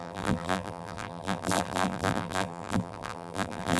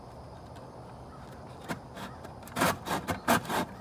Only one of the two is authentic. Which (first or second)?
second